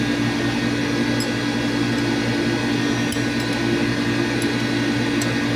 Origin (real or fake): real